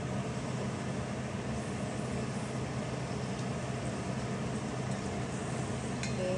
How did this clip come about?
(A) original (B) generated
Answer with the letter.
A